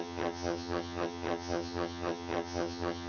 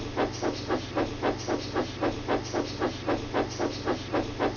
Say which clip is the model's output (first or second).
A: first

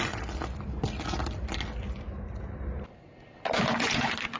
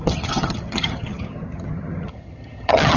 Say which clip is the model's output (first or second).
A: second